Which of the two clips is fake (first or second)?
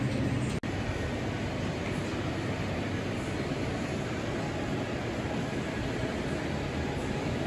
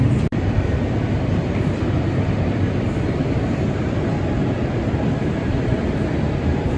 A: second